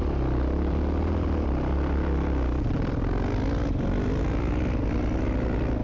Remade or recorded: recorded